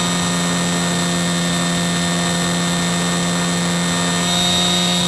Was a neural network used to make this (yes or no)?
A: no